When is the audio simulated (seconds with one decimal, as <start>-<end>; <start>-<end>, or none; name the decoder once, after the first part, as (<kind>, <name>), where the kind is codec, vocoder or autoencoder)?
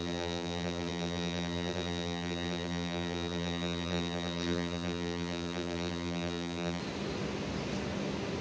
0.0-6.8 (vocoder, BigVGAN v2)